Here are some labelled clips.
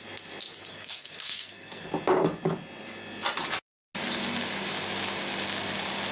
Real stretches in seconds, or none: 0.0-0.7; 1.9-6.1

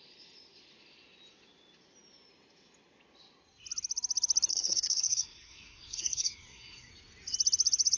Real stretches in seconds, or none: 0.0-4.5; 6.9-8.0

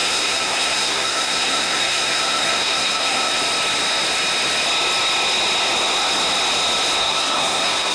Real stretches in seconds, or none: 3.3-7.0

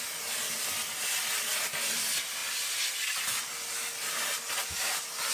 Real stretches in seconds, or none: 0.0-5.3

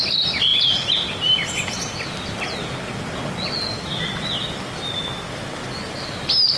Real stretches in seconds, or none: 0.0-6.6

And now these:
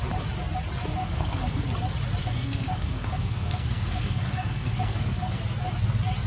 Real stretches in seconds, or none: 0.0-1.0; 1.6-2.2; 5.4-6.3

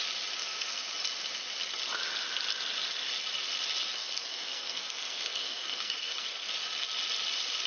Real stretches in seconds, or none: 0.0-0.4; 0.9-4.0; 6.5-7.7

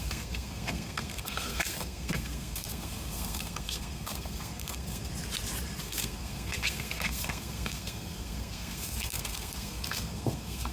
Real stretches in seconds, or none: 5.1-5.8